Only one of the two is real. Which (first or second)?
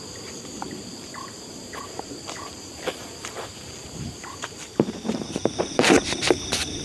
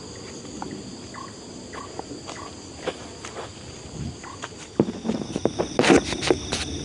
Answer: second